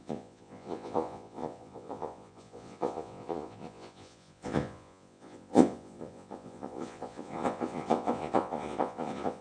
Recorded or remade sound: remade